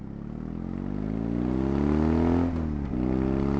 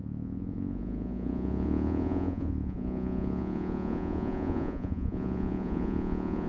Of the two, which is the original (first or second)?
first